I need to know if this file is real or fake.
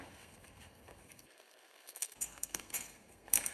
fake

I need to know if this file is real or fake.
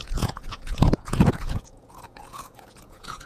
fake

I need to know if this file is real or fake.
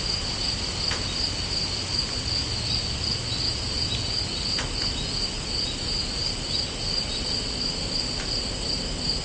real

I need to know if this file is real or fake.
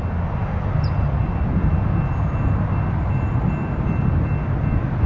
real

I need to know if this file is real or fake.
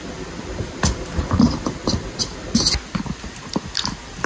real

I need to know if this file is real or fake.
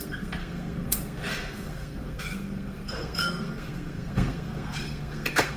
fake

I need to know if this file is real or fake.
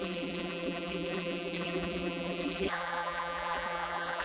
fake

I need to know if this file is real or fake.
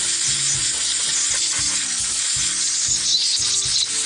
real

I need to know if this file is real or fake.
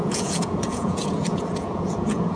fake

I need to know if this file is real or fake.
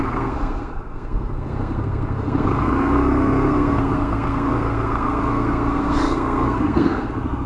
fake